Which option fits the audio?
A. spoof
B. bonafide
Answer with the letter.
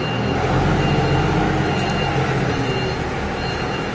B